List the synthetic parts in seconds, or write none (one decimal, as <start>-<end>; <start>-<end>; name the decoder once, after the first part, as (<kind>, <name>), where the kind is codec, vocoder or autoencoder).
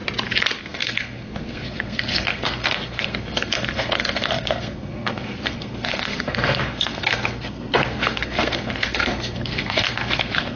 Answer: 0.6-10.6 (codec, SNAC)